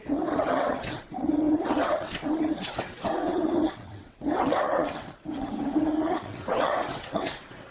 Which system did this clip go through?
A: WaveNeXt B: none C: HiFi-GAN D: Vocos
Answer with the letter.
A